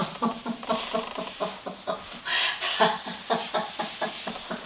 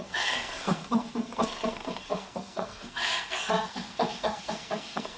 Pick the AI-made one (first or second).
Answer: second